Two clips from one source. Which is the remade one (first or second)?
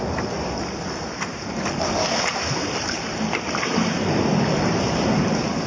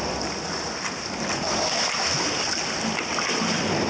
first